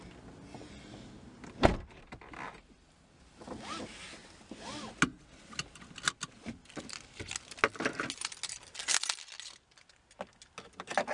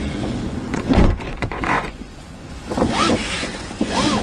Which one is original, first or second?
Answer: first